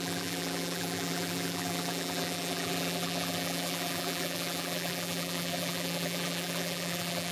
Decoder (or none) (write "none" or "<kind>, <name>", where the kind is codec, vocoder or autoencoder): vocoder, BigVGAN v2